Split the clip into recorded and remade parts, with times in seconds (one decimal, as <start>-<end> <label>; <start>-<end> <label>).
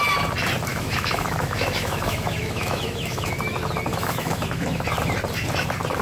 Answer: 0.0-0.7 recorded; 0.7-3.3 remade; 3.3-3.9 recorded; 3.9-4.8 remade; 4.8-6.0 recorded